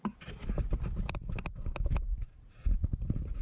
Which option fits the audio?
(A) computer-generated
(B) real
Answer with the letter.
B